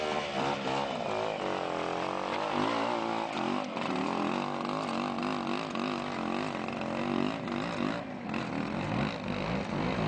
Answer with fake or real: real